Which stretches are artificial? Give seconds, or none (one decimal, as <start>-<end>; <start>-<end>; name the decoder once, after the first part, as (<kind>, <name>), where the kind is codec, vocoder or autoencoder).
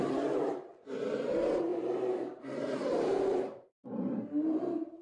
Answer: 0.0-5.0 (vocoder, BigVGAN v2)